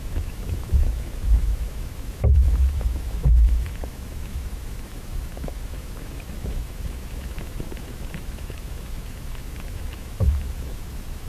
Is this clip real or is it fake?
fake